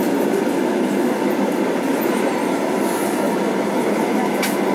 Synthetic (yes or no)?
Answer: no